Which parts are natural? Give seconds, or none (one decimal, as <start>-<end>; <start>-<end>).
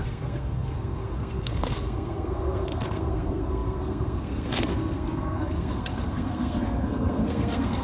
none